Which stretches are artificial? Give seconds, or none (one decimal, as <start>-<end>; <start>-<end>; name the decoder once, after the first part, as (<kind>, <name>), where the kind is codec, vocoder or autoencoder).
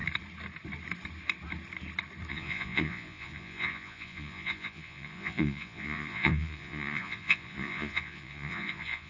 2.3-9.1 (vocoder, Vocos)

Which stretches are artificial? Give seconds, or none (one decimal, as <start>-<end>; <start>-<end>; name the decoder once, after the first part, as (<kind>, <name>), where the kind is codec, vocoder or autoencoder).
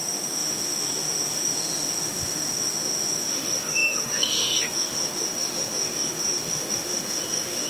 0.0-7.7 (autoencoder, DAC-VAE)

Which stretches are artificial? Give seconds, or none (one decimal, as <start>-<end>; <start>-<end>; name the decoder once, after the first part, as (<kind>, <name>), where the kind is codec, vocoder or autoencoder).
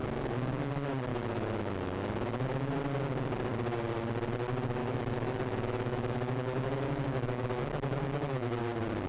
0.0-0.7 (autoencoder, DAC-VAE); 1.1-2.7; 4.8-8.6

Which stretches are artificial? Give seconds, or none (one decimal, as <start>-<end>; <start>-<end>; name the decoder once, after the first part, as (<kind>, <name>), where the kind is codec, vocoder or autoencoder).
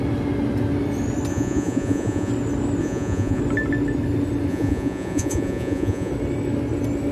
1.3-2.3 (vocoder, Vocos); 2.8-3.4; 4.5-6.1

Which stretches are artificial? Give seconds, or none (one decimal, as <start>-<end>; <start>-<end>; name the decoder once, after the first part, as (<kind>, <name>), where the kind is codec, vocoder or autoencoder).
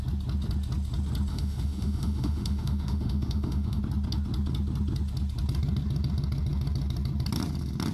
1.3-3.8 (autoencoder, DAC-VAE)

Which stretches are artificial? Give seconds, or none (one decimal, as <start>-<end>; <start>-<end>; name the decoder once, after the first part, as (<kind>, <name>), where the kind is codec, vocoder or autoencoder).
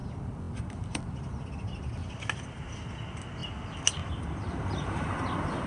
none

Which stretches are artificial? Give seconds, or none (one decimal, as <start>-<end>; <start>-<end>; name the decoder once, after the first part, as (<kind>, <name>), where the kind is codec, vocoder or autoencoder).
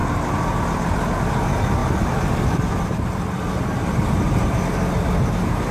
none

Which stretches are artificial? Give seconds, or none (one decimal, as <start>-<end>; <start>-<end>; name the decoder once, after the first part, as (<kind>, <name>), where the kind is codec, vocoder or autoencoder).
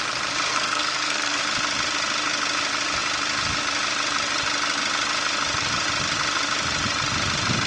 0.5-1.4 (codec, SNAC)